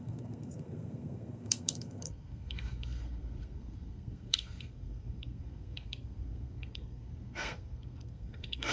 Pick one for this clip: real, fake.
fake